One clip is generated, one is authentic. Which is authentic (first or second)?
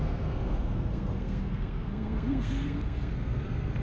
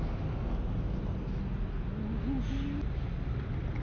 second